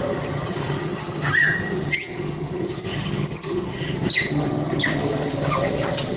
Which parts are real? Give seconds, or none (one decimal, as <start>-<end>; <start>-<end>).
none